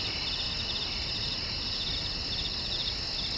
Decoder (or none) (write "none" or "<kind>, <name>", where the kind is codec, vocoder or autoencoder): none